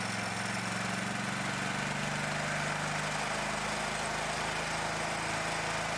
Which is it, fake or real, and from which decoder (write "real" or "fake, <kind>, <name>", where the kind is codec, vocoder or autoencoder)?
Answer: real